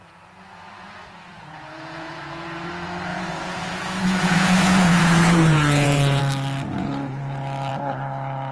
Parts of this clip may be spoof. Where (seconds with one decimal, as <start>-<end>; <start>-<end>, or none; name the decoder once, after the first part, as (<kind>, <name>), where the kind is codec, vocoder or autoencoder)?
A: 0.0-2.7 (vocoder, Vocos); 3.1-6.2